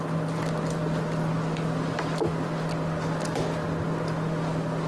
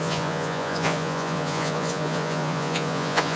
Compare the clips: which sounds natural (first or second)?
first